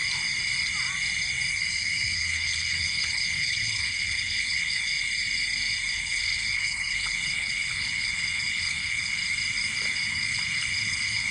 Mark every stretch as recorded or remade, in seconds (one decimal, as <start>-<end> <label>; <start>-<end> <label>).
0.0-1.7 recorded; 1.7-4.9 remade; 4.9-5.9 recorded; 5.9-9.2 remade; 9.2-9.9 recorded; 9.9-11.3 remade